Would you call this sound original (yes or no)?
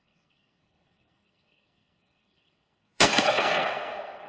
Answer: no